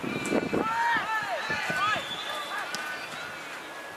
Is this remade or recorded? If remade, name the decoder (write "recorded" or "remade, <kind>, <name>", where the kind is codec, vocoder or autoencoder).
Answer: recorded